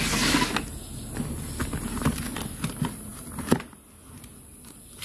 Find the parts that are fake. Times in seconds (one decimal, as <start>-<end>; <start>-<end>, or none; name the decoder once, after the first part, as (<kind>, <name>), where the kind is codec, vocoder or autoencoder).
none